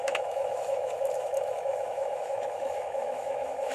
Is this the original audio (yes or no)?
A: no